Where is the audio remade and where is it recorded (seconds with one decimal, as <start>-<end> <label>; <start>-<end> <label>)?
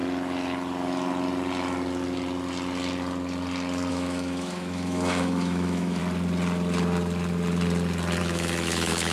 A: 0.0-3.9 recorded; 3.9-6.0 remade; 6.0-8.2 recorded; 8.2-9.1 remade